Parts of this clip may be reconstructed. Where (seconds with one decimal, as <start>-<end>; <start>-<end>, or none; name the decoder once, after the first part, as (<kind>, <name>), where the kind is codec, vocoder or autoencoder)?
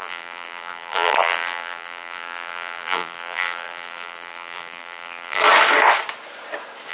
0.0-5.4 (vocoder, BigVGAN v2)